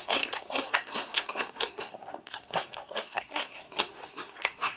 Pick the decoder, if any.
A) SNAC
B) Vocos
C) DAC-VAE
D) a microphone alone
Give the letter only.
A